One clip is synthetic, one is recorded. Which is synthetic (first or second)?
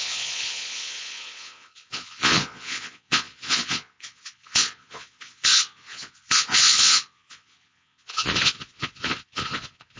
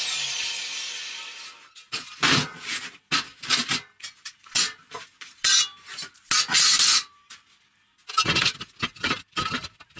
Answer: first